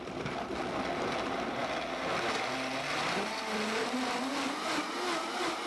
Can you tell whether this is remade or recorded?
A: recorded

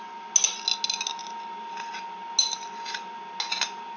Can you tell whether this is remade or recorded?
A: recorded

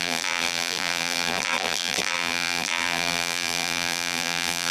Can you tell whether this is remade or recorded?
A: remade